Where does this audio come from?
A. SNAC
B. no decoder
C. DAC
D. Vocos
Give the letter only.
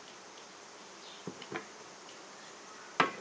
B